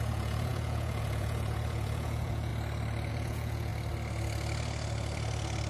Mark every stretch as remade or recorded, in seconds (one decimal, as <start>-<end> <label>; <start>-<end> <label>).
0.0-2.5 remade; 2.5-3.1 recorded; 3.1-3.7 remade; 3.7-5.7 recorded